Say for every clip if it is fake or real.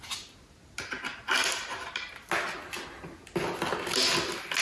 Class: real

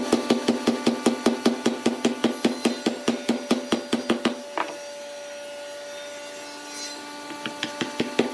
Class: real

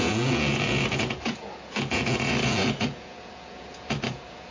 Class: fake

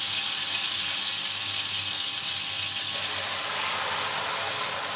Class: real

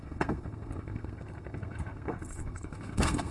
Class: fake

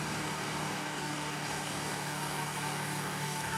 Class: fake